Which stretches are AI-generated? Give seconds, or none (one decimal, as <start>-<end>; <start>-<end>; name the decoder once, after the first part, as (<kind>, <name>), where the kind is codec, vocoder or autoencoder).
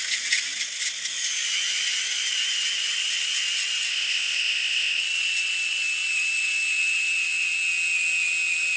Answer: 3.9-5.0 (codec, ZipCodec)